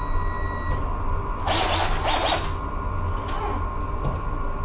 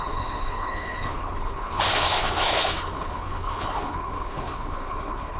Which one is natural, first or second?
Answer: first